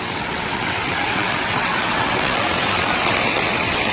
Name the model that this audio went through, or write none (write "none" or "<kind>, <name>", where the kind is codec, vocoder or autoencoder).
vocoder, WaveNeXt